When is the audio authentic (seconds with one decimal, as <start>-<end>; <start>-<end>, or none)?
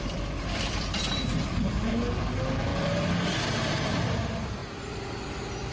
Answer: 1.9-2.7; 4.1-5.7